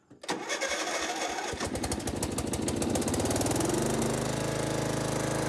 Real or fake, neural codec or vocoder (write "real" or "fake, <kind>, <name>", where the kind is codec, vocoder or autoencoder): real